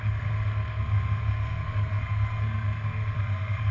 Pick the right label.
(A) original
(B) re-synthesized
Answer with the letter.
B